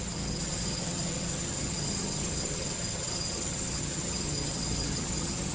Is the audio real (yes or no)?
no